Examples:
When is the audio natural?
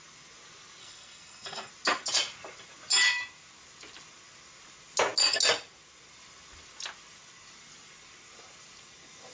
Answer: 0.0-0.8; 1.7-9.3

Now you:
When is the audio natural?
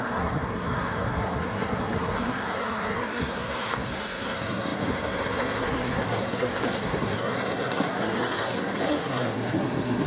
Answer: none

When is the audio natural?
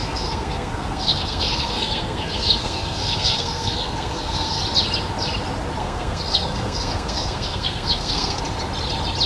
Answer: 4.6-5.8; 8.4-9.3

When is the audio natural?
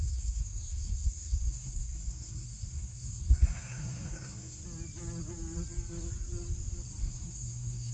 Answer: 4.6-7.0